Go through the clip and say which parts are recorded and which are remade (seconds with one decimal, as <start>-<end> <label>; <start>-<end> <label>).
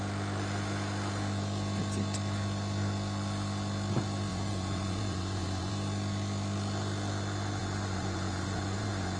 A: 0.0-4.3 recorded; 4.3-5.7 remade; 5.7-7.6 recorded; 7.6-9.2 remade